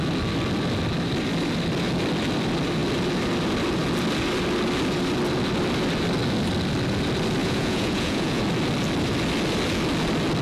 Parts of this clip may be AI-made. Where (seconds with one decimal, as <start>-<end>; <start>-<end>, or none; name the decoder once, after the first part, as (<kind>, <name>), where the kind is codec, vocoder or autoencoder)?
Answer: 7.4-8.4 (vocoder, Vocos)